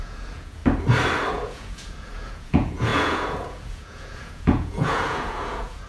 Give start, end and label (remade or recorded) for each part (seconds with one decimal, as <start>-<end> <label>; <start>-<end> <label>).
0.0-0.6 remade; 0.6-1.3 recorded; 1.3-5.9 remade